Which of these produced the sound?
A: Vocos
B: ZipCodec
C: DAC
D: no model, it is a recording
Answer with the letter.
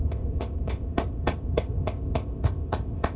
B